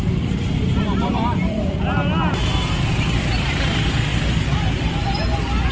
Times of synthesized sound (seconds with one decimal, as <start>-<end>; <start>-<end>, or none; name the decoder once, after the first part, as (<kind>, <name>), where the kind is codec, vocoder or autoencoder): none